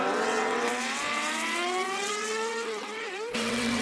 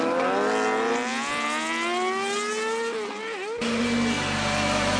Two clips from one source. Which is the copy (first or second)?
first